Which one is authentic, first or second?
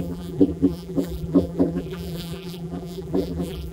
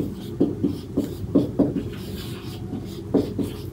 second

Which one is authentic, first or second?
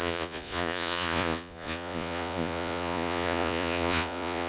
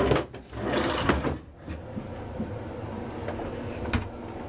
second